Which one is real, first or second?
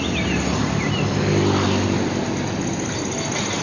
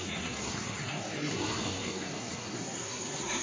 first